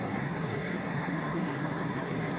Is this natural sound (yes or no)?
no